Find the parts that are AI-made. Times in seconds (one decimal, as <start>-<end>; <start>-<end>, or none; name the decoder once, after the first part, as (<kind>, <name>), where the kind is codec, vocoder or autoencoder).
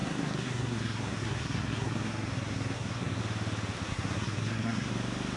0.0-3.2 (codec, SNAC); 3.9-4.9